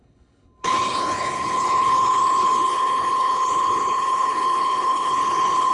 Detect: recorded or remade remade